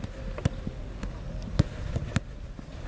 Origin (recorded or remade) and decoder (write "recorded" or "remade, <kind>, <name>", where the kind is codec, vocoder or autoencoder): recorded